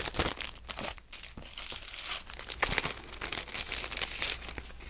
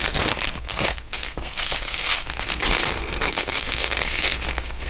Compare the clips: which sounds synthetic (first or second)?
second